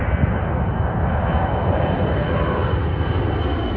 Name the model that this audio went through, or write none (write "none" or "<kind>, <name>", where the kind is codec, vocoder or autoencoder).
none